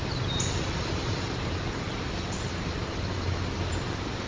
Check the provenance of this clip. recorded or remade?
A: recorded